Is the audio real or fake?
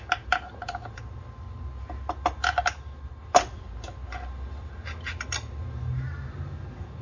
real